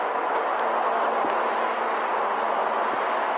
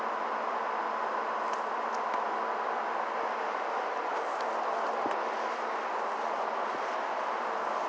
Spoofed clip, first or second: second